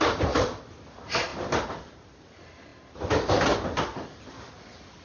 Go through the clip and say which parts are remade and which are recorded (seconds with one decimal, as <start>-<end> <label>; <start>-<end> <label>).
0.0-5.0 recorded